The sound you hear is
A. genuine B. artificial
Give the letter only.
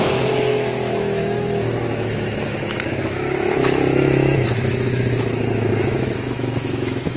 B